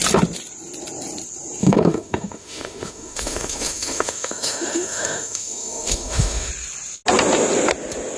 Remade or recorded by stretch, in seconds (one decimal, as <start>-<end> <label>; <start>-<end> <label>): 0.0-1.6 recorded; 1.6-6.5 remade; 6.5-8.2 recorded